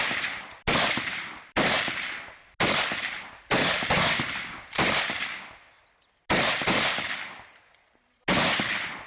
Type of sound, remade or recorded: recorded